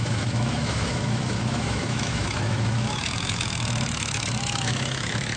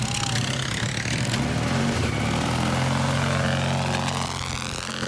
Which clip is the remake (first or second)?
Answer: first